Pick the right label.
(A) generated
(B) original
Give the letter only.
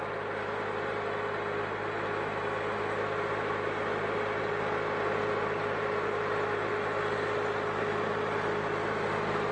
B